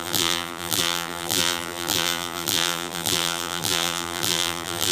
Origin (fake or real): fake